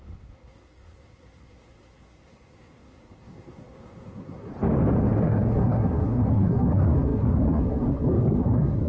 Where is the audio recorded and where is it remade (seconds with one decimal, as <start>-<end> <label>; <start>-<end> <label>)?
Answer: 0.0-4.5 remade; 4.5-5.2 recorded; 5.2-8.9 remade